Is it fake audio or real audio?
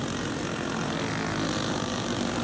real